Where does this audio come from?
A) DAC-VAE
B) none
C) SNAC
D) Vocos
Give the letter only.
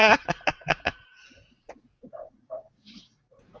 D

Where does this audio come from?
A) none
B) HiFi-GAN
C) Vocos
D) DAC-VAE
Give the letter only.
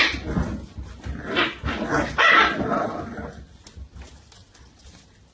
A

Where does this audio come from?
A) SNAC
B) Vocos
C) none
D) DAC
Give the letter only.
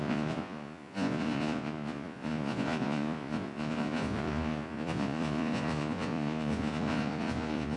B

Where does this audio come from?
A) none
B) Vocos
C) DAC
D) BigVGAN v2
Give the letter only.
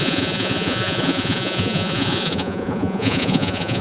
B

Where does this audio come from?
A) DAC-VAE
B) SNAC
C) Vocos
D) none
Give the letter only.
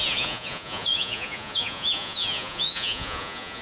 C